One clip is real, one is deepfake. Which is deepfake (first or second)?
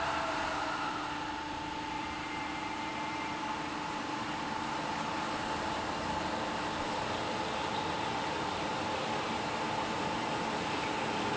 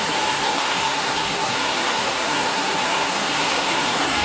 second